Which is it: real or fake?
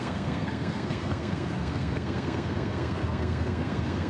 fake